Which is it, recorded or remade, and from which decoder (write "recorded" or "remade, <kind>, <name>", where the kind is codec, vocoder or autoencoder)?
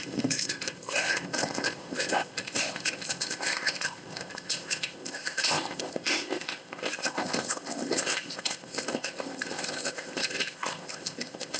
remade, codec, ZipCodec